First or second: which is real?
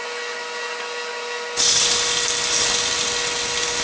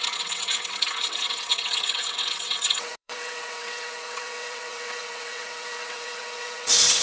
first